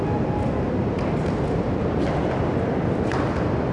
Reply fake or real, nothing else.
real